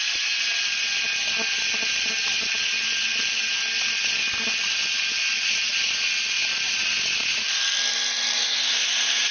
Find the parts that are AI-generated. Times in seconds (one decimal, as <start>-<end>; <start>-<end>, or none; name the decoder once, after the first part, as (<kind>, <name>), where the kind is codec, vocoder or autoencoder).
none